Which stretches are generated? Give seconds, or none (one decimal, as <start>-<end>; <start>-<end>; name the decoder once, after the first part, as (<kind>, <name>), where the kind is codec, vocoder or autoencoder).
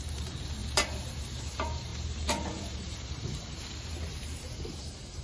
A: 0.0-5.2 (vocoder, BigVGAN v2)